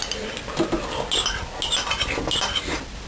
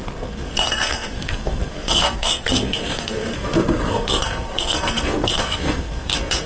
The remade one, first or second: second